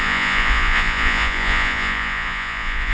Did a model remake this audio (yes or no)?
yes